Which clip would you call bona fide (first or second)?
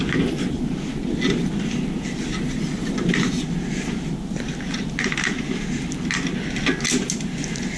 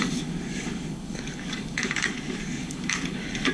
first